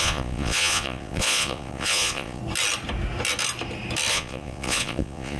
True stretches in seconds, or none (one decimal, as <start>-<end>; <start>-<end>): 2.4-4.1